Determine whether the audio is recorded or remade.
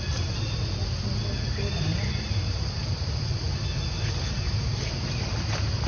recorded